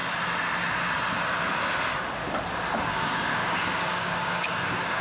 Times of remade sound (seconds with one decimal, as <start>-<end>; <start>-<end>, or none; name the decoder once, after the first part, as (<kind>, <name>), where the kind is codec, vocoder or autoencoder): 2.8-5.0 (codec, DAC)